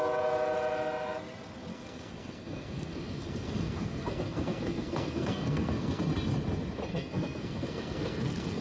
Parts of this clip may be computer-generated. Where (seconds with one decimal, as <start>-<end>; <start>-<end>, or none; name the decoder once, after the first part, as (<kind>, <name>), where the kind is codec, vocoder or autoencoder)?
1.7-6.0 (codec, SNAC); 6.9-8.6